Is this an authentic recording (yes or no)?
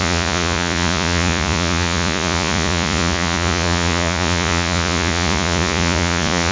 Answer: no